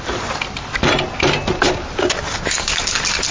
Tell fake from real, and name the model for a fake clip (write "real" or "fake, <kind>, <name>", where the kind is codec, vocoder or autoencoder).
real